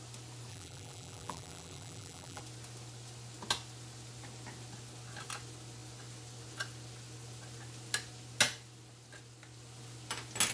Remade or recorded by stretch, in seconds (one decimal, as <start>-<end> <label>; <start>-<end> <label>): 0.0-0.5 recorded; 0.5-2.4 remade; 2.4-10.5 recorded